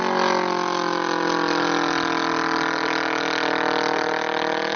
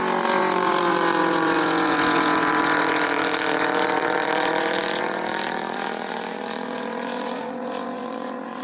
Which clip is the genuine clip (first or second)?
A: first